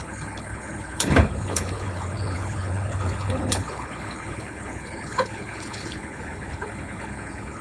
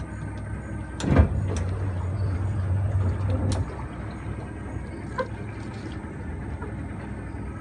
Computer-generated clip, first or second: first